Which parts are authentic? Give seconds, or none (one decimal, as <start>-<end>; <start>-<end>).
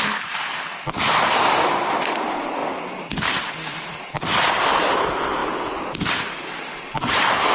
0.0-7.5